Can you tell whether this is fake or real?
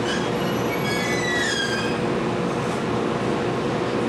real